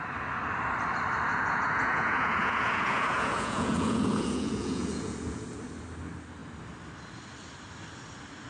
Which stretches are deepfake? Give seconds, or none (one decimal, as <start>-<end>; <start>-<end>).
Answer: 1.3-5.4